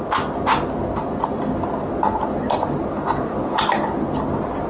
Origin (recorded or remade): recorded